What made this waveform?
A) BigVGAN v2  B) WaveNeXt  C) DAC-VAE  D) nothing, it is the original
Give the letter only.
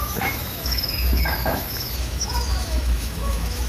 C